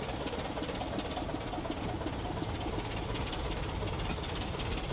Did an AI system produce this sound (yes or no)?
no